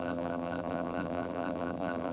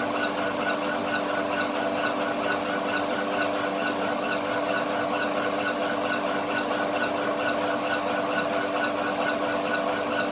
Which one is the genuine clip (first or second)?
second